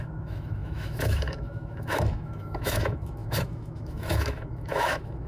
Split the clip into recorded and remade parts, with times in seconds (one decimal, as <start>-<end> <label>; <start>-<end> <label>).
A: 0.0-5.3 remade